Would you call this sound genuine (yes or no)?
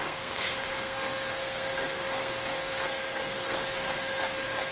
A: no